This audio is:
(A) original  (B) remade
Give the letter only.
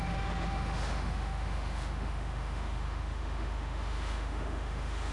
B